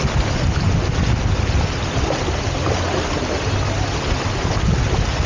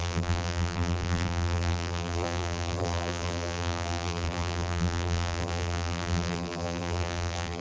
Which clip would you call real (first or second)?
first